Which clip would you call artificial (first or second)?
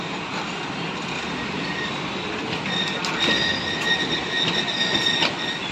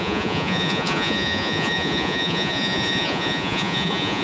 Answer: second